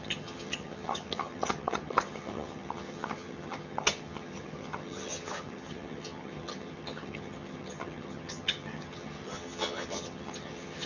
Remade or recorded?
remade